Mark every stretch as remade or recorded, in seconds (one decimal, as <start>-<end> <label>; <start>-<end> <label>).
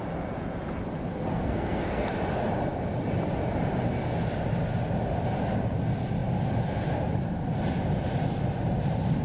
0.0-1.1 recorded; 1.1-2.1 remade; 2.1-9.2 recorded